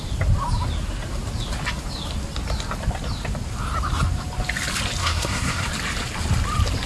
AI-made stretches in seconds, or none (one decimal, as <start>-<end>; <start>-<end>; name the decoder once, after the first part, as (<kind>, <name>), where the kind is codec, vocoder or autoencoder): 5.0-5.7 (codec, SNAC)